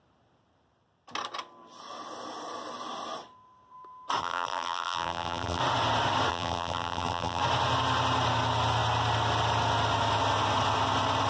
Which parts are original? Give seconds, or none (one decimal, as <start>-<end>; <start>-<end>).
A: 0.0-4.2; 5.6-6.3; 7.4-11.3